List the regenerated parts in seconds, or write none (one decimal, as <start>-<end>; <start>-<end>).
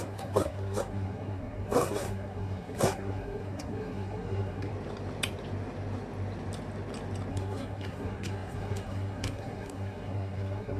0.0-4.7; 7.3-10.8